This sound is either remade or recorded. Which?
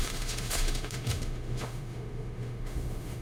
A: remade